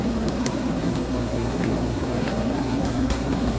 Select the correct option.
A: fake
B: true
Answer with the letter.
A